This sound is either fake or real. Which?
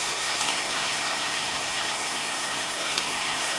fake